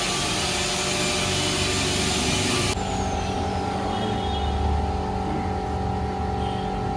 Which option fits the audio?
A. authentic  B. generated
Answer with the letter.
A